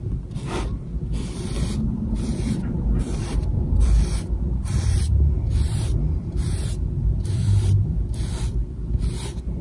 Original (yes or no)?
no